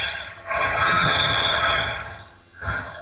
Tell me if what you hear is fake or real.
fake